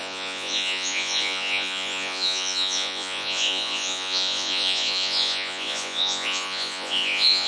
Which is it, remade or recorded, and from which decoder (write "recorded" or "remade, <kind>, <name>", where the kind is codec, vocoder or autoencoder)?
remade, vocoder, Vocos